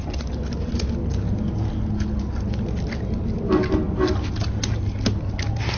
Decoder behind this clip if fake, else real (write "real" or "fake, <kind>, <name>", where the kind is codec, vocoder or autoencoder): real